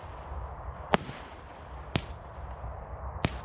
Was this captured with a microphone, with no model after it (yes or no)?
yes